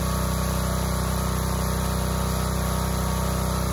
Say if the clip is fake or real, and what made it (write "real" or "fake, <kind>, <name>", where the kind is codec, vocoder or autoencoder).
real